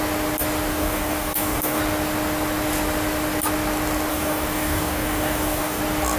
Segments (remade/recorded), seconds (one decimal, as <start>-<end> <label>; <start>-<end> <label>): 0.0-0.7 recorded; 0.7-1.8 remade; 1.8-4.1 recorded; 4.1-5.8 remade; 5.8-6.2 recorded